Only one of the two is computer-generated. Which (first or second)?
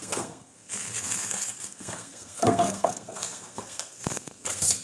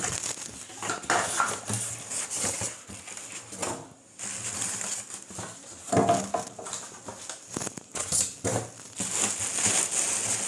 first